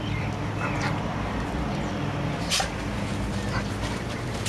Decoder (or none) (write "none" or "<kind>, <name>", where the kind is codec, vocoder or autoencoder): vocoder, BigVGAN v2